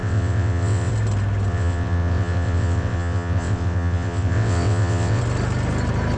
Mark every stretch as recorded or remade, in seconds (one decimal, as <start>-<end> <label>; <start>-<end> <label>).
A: 0.0-0.9 remade; 0.9-1.5 recorded; 1.5-5.2 remade; 5.2-6.2 recorded